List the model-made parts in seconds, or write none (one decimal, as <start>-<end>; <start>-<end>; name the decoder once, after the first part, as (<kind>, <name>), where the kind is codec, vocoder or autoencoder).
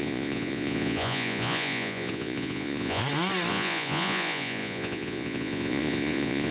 0.0-3.0 (vocoder, Vocos); 3.5-6.5